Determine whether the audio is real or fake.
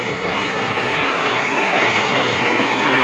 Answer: fake